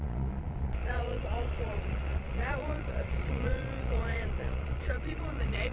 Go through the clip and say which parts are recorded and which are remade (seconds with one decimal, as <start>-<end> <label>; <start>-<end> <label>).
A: 0.0-5.7 remade